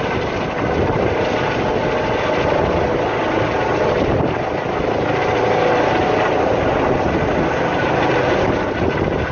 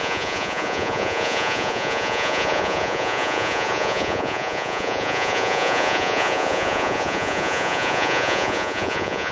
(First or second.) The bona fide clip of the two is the first